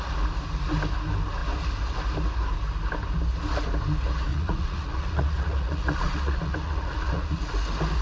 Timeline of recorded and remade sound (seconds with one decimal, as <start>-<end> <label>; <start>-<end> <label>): 0.0-4.3 recorded; 4.3-7.5 remade; 7.5-8.0 recorded